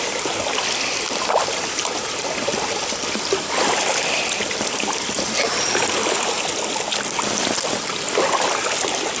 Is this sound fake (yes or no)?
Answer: no